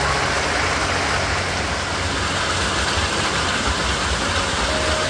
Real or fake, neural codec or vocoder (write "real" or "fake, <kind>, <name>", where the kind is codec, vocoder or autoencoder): real